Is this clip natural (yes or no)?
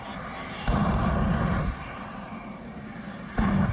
no